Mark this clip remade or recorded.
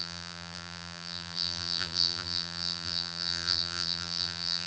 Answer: remade